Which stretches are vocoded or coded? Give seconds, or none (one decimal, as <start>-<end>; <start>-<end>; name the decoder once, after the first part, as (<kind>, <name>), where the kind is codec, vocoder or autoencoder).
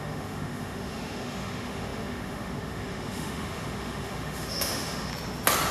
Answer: 0.0-5.1 (autoencoder, DAC-VAE)